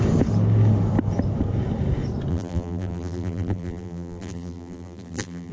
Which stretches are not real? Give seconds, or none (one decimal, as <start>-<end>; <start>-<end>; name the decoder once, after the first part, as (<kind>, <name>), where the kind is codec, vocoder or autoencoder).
2.3-5.5 (vocoder, BigVGAN v2)